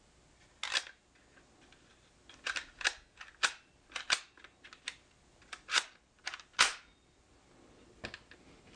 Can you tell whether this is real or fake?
real